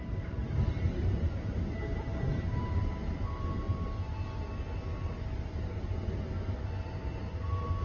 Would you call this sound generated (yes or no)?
no